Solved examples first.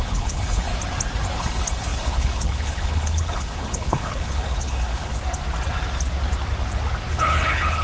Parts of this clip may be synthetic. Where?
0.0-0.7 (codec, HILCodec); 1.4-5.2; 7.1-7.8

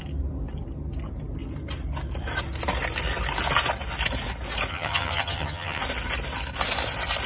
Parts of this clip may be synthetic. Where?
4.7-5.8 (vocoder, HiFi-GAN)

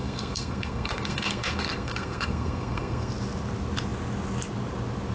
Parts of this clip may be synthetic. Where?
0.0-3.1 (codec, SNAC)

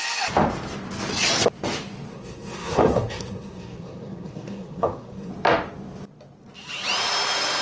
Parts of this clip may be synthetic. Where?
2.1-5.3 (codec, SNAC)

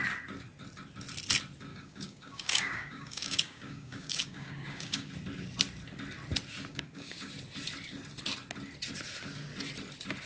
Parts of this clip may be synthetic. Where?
1.7-5.1 (codec, DAC); 6.7-7.3